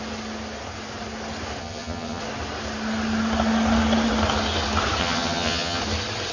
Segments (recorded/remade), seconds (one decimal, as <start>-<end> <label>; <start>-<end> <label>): 0.0-1.6 recorded; 1.6-2.2 remade; 2.2-5.0 recorded; 5.0-5.8 remade; 5.8-6.3 recorded